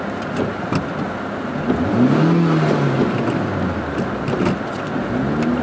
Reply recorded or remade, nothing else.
recorded